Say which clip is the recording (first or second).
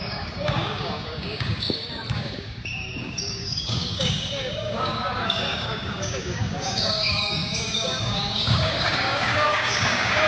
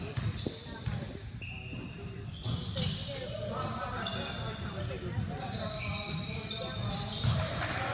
second